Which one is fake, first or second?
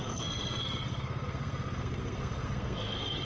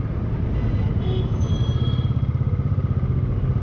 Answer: first